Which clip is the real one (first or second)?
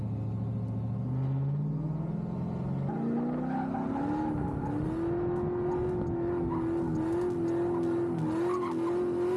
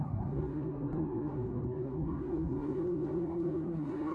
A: first